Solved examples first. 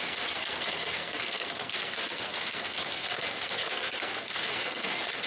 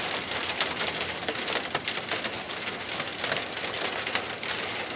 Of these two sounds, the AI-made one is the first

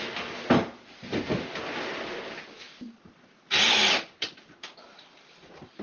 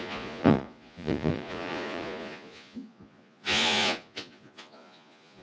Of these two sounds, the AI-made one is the second